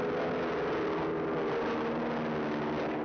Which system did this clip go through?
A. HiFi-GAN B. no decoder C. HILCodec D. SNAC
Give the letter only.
B